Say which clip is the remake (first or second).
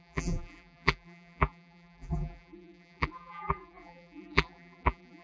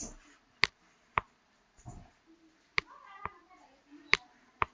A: first